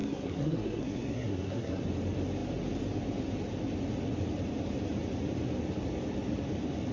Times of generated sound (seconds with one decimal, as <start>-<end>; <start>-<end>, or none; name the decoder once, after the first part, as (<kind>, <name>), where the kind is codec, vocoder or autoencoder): 0.0-1.9 (codec, SNAC)